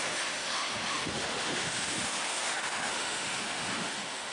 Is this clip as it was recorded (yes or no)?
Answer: no